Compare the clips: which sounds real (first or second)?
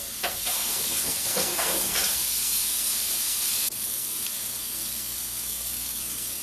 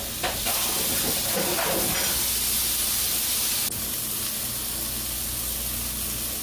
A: second